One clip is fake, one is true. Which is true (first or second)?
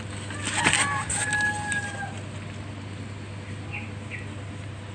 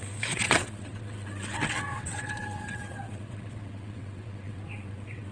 first